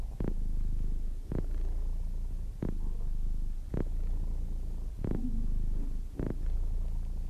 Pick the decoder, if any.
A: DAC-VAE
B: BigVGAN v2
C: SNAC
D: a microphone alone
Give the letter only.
D